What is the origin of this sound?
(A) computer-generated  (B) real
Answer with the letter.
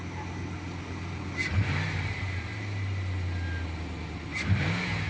B